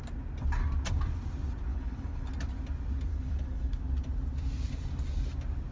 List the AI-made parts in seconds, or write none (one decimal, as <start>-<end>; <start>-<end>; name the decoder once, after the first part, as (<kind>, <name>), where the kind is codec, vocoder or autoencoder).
1.7-2.3 (codec, HILCodec); 3.1-3.8